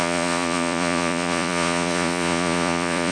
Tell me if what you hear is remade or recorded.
remade